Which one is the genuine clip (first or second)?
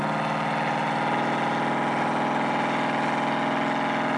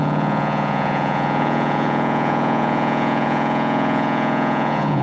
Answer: first